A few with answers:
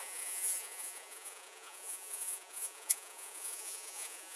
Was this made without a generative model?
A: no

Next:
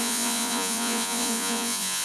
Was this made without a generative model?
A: no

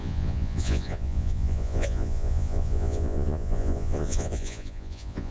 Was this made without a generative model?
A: no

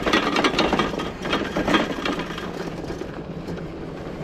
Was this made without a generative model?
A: yes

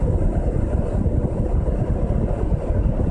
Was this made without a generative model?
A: yes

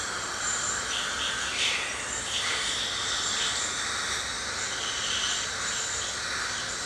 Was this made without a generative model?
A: yes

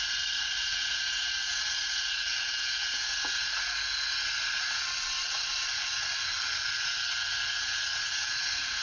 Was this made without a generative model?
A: yes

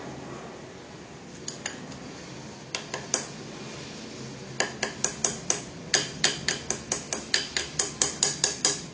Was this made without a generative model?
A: yes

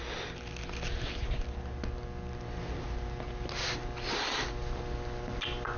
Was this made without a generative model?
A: yes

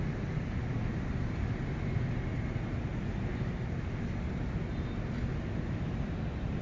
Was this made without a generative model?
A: yes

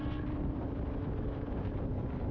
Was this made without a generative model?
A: yes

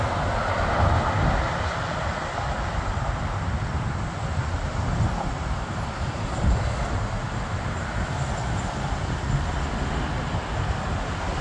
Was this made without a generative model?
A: yes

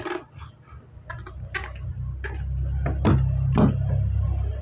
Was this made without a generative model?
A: yes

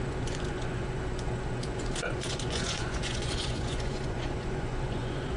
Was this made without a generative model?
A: no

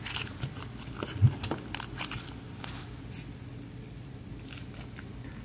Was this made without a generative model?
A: yes